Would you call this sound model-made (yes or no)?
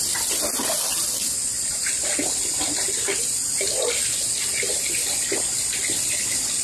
no